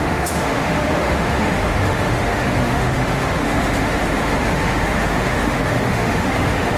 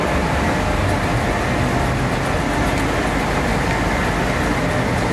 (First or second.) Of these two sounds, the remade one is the first